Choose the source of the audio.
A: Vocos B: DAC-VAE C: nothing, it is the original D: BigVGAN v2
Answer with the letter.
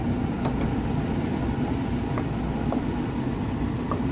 C